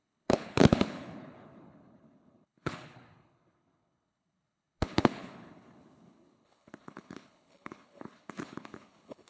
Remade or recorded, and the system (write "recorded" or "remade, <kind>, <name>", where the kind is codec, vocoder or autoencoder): remade, codec, HILCodec